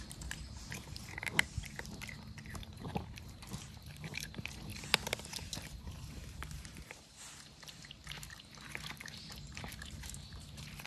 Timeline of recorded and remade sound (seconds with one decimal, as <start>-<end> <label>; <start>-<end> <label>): 0.0-4.7 remade; 4.7-5.3 recorded; 5.3-10.9 remade